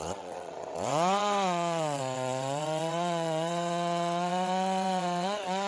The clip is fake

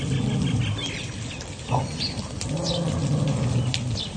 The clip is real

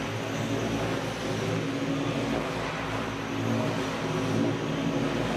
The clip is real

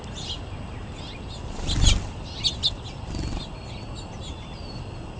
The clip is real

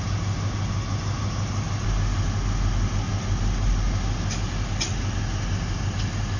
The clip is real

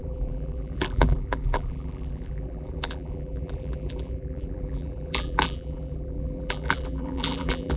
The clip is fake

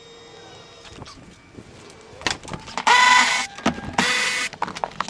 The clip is real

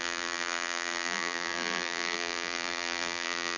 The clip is fake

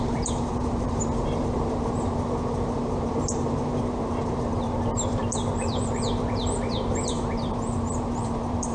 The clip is fake